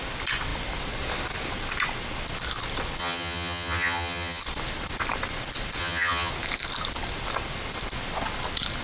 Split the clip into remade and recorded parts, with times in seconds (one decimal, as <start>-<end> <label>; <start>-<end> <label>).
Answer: 0.0-3.0 recorded; 3.0-4.4 remade; 4.4-5.8 recorded; 5.8-6.3 remade; 6.3-8.8 recorded